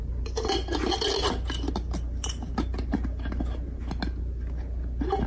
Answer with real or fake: real